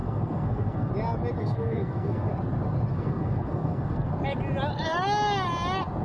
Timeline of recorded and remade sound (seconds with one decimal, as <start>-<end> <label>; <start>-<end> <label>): 0.0-0.9 remade; 0.9-1.4 recorded; 1.4-2.3 remade; 2.3-2.9 recorded; 2.9-4.1 remade; 4.1-6.0 recorded